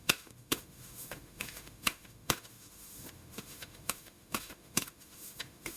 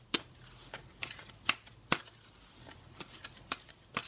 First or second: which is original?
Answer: second